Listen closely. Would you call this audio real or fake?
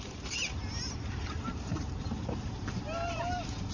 fake